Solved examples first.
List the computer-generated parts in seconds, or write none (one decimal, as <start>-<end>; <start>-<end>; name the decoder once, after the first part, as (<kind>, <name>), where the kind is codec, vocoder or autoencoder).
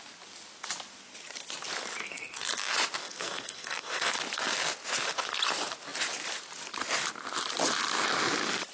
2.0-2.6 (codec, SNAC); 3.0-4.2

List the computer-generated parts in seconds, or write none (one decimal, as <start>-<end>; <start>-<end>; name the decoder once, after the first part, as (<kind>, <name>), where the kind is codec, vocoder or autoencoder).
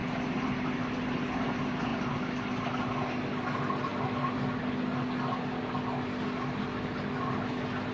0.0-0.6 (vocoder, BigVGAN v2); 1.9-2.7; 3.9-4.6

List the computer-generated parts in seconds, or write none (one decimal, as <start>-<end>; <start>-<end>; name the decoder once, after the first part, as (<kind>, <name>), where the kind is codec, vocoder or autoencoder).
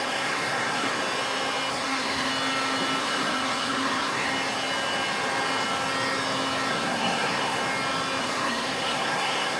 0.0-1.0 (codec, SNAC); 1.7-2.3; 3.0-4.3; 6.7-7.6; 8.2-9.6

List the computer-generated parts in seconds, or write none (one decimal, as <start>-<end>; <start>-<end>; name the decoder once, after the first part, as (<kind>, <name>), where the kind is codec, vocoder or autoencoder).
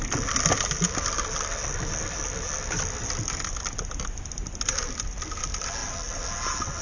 none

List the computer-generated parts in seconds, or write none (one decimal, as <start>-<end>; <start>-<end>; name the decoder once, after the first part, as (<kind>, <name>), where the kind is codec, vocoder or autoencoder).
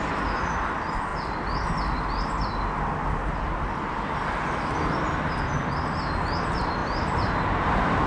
6.8-8.1 (vocoder, BigVGAN v2)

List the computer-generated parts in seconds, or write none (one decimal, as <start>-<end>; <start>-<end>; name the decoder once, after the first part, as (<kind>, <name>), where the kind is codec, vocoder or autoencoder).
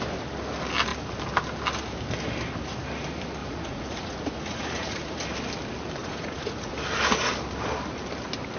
3.4-5.2 (vocoder, Vocos); 6.0-6.7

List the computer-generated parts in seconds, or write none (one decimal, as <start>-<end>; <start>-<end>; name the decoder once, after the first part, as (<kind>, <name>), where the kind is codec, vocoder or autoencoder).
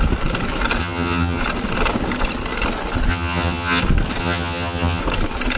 0.8-1.4 (vocoder, HiFi-GAN); 3.1-3.8; 4.2-5.0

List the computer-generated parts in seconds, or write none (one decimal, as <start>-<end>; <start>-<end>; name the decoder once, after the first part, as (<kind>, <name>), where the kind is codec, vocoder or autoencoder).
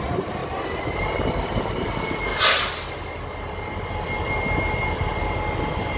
0.0-0.4 (vocoder, BigVGAN v2); 1.7-2.3; 4.6-5.1; 5.6-6.0